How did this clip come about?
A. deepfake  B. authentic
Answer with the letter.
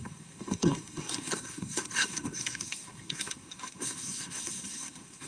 A